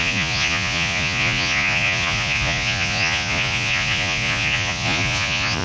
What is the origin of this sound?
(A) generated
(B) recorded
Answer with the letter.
A